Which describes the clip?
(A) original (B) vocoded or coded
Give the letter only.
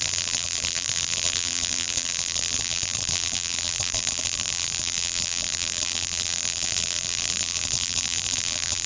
B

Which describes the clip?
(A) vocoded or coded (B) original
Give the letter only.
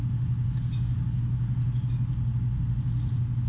B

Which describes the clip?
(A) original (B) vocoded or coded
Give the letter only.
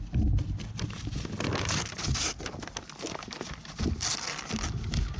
A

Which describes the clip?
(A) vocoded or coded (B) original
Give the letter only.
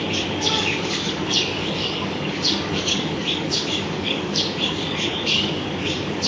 A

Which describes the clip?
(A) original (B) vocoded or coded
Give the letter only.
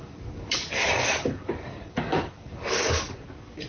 B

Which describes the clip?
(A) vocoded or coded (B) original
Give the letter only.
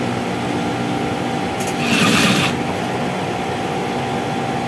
B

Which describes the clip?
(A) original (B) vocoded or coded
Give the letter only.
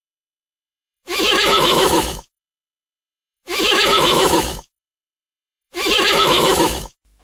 B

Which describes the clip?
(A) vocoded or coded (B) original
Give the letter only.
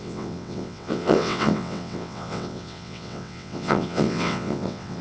A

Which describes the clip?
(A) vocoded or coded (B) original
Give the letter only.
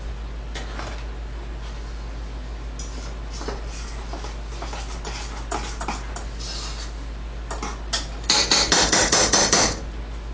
B